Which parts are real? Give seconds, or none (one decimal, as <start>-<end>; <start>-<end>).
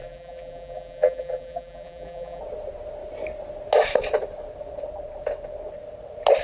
2.4-6.4